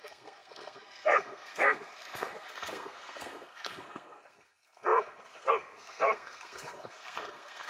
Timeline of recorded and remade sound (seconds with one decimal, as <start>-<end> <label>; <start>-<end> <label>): 0.0-7.7 remade